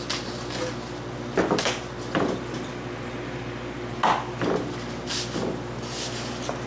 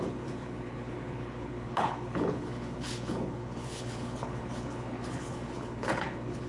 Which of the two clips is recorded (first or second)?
first